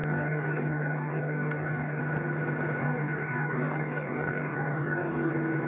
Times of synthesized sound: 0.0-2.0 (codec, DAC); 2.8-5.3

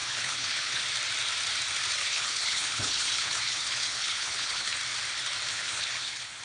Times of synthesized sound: 0.0-0.8 (codec, HILCodec); 2.0-4.8; 5.5-6.4

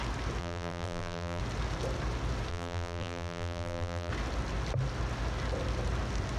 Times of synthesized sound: 0.4-1.4 (vocoder, BigVGAN v2); 2.5-4.1